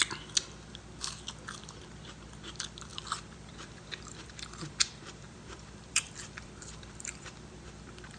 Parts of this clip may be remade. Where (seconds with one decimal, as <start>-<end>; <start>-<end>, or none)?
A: 2.9-8.2